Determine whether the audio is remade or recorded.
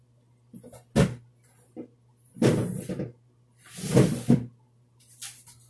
recorded